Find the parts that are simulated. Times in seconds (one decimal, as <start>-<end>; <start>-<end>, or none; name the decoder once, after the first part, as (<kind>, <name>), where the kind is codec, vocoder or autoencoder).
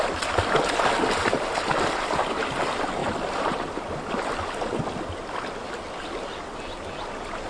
none